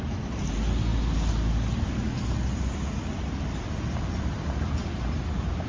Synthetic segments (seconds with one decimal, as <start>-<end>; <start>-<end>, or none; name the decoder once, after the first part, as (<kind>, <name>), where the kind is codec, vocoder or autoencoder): none